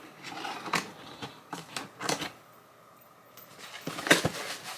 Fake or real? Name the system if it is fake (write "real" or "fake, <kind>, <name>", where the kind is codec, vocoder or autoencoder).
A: real